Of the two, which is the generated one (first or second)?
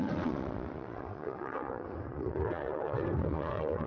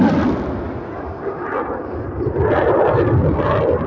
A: first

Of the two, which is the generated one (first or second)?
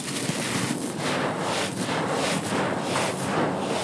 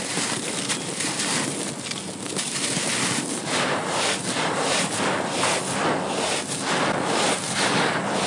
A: second